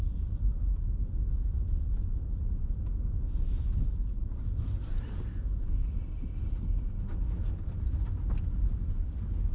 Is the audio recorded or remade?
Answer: recorded